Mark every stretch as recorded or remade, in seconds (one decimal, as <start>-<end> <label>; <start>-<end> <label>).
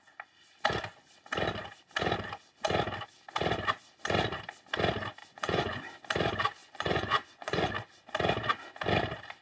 0.0-5.2 recorded; 5.2-5.8 remade; 5.8-6.6 recorded; 6.6-7.7 remade; 7.7-9.4 recorded